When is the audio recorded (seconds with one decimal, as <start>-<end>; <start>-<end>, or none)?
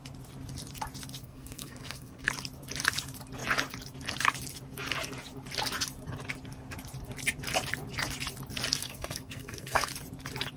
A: 0.0-1.2; 2.3-8.8; 9.9-10.6